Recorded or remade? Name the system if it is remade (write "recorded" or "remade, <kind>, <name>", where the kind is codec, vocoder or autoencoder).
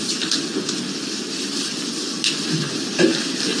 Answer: recorded